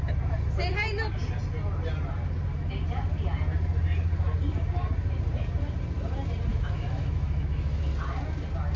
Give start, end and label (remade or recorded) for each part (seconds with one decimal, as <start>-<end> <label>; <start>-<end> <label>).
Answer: 0.0-6.5 recorded; 6.5-7.8 remade; 7.8-8.8 recorded